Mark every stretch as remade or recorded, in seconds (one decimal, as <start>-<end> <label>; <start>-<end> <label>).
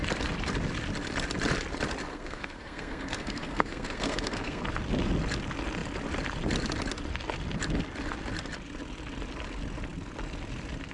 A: 0.0-2.1 recorded; 2.1-4.6 remade; 4.6-10.9 recorded